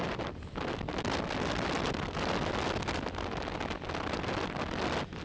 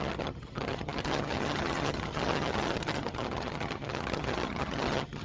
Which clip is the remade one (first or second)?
second